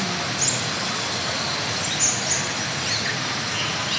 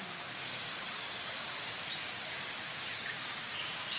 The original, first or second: first